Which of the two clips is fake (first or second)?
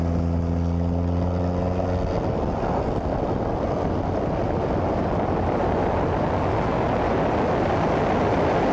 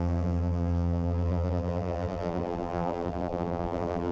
second